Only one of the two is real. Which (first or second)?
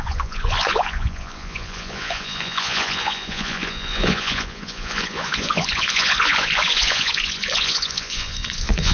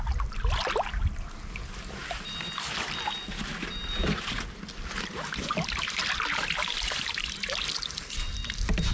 second